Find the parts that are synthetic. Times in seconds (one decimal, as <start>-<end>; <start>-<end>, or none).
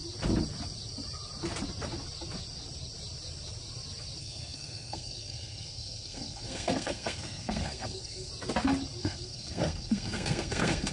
4.2-8.3; 9.0-10.9